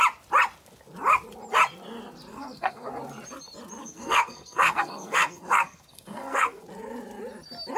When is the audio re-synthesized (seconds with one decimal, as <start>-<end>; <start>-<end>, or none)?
2.3-2.9; 3.8-6.6